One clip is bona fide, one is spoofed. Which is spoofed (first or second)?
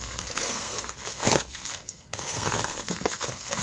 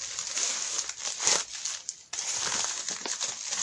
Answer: first